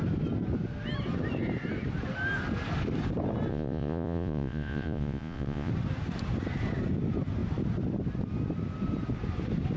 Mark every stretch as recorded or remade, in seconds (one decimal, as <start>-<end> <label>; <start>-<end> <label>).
0.0-3.5 recorded; 3.5-5.7 remade; 5.7-9.8 recorded